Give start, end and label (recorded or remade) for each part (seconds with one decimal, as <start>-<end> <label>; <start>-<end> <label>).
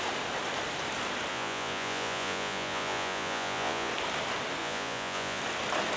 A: 0.0-1.3 recorded; 1.3-3.9 remade; 3.9-4.6 recorded; 4.6-5.4 remade; 5.4-6.0 recorded